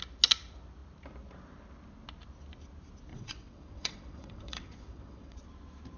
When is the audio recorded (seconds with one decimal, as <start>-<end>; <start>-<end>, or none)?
0.0-3.1; 5.4-6.0